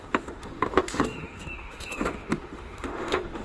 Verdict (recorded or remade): remade